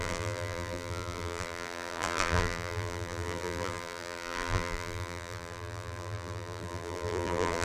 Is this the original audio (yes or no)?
no